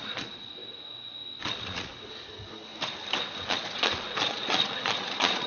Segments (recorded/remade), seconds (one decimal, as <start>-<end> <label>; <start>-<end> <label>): 0.0-0.6 remade; 0.6-1.4 recorded; 1.4-1.9 remade; 1.9-3.4 recorded; 3.4-5.5 remade